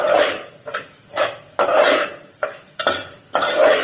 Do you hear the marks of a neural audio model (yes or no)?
no